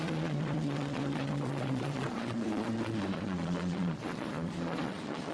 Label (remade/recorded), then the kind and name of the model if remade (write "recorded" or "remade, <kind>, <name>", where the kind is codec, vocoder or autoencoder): remade, vocoder, Vocos